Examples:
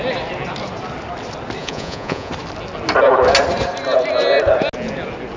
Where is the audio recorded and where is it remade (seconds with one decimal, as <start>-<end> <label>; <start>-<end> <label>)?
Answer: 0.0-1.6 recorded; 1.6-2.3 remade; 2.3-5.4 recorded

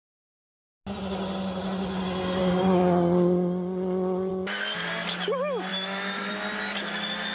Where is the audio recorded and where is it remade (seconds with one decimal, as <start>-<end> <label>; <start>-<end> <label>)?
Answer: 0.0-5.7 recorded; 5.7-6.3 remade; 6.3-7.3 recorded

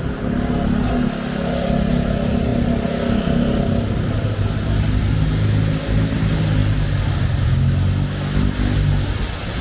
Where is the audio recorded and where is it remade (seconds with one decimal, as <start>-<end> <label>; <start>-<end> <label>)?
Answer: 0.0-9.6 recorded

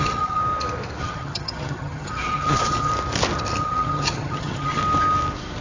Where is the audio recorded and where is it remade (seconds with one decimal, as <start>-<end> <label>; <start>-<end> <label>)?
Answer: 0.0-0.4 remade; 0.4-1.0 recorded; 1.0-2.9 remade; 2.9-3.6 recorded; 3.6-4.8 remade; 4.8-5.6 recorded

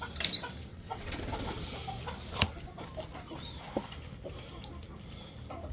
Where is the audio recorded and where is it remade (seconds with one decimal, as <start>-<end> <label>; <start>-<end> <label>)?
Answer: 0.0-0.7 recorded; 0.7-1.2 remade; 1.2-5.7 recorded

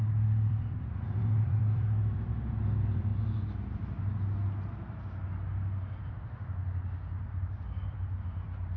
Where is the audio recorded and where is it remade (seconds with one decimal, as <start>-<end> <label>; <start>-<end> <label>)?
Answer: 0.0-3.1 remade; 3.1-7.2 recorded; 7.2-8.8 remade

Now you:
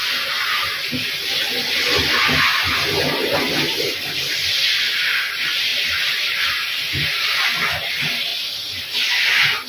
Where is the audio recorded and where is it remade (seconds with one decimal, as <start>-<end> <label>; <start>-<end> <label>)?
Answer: 0.0-3.2 recorded; 3.2-3.8 remade; 3.8-5.7 recorded; 5.7-7.4 remade; 7.4-9.7 recorded